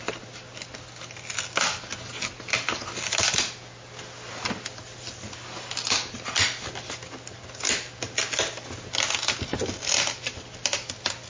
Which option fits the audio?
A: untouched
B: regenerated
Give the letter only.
A